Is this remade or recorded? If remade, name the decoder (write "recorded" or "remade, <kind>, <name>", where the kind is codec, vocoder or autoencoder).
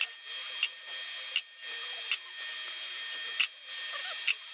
recorded